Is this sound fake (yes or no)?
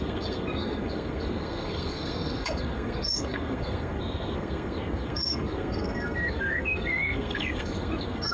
yes